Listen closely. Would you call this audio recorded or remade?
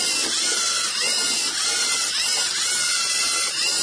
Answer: recorded